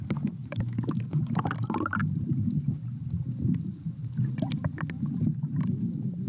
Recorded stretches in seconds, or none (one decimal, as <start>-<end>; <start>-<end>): 0.0-0.4; 1.0-6.3